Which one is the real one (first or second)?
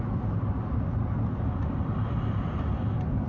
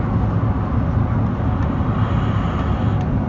second